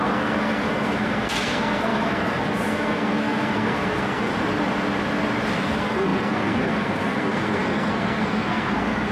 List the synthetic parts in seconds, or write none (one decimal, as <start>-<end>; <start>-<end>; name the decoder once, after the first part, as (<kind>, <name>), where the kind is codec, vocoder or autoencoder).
0.0-4.3 (codec, SNAC); 5.5-9.1